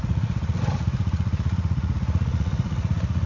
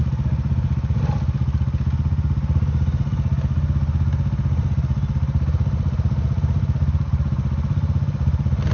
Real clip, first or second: second